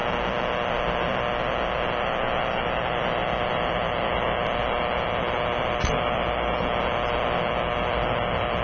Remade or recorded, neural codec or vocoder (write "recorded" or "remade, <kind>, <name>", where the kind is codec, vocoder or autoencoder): recorded